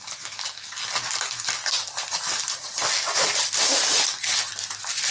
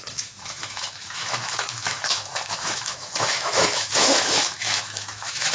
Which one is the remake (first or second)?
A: second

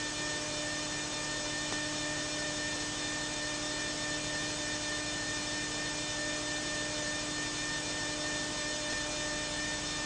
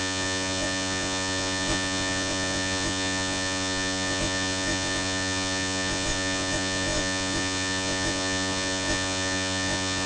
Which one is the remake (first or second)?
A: second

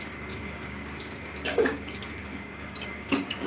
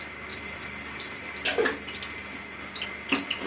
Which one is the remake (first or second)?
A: first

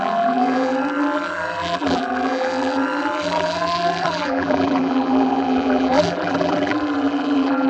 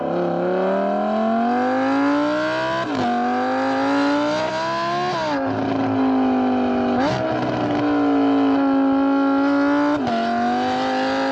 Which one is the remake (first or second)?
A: first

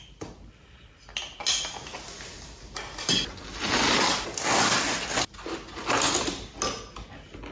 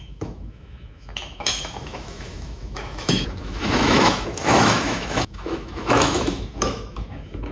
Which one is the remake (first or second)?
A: second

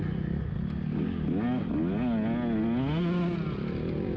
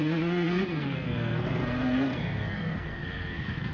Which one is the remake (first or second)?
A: second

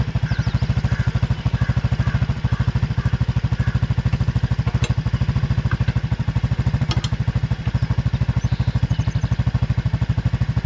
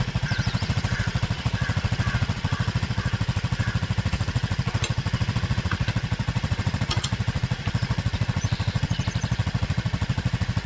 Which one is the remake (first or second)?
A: second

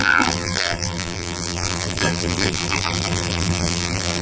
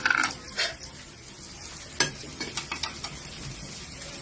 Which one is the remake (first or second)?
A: first